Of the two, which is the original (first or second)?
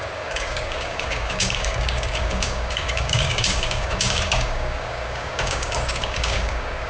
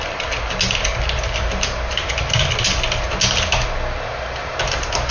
second